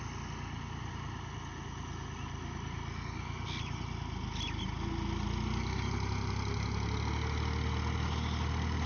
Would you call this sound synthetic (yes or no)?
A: no